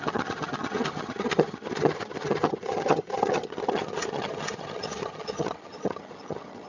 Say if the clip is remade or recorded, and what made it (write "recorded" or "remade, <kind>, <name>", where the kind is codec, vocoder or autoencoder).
remade, vocoder, HiFi-GAN